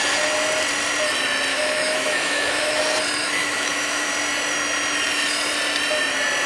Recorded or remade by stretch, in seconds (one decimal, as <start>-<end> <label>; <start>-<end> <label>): 0.0-1.5 recorded; 1.5-2.8 remade; 2.8-3.2 recorded; 3.2-4.1 remade; 4.1-6.5 recorded